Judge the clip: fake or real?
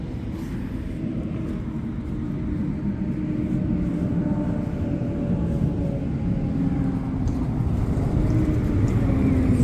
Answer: real